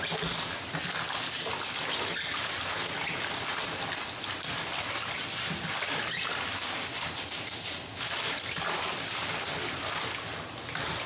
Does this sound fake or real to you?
real